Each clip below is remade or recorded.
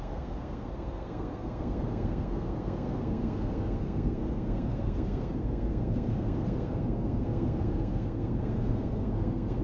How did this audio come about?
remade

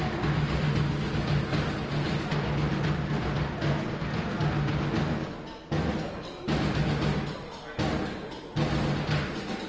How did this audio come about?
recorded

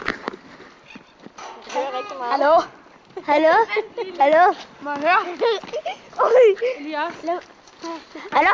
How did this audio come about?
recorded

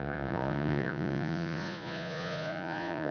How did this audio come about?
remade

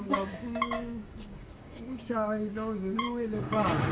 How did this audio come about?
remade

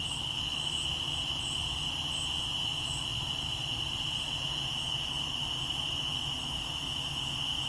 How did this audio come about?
recorded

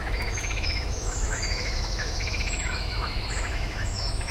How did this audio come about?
remade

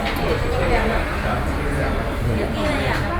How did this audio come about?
recorded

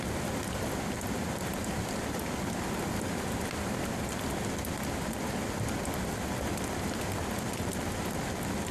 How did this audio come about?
recorded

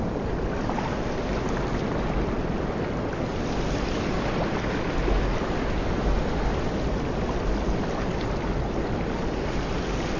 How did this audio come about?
recorded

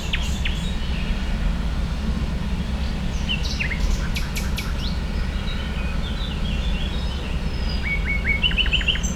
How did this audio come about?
recorded